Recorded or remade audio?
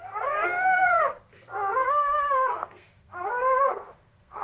remade